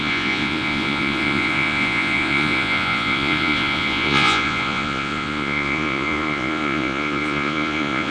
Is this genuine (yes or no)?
no